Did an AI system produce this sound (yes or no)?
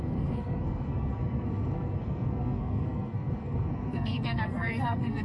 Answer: yes